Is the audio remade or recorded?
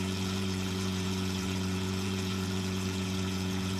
remade